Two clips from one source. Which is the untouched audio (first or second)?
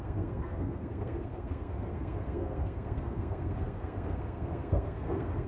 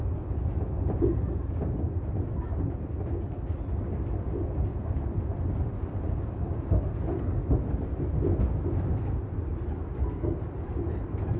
second